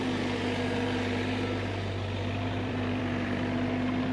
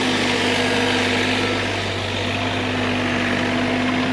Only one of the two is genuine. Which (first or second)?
second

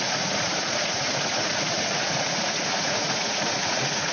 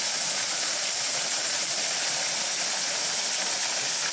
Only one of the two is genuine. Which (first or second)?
second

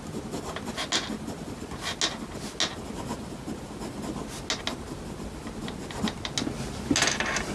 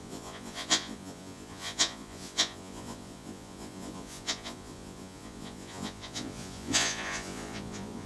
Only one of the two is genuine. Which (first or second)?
first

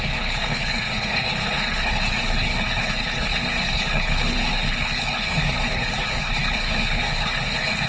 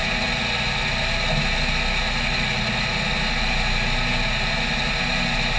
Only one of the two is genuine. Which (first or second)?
second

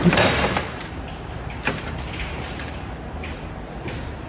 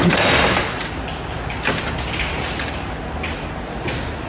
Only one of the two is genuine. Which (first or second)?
second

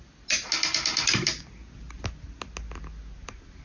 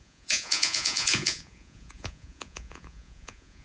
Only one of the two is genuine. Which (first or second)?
first